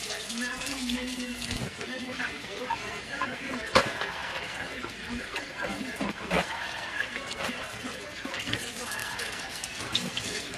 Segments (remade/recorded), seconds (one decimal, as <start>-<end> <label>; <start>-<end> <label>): 0.0-10.6 remade